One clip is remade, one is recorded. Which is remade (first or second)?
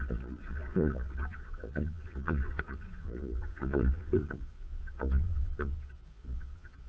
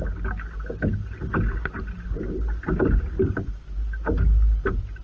first